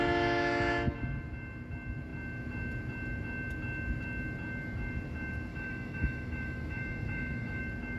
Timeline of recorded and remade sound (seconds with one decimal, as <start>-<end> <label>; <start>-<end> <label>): 0.0-5.5 recorded; 5.5-7.6 remade; 7.6-8.0 recorded